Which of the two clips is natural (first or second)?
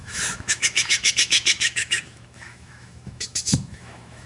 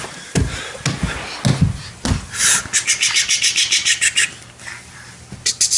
second